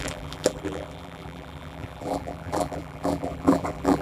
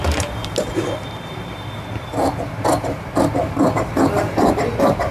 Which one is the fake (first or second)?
first